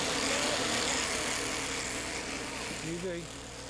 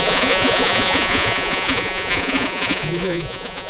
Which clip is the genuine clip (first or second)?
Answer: first